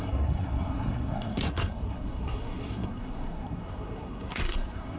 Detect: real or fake fake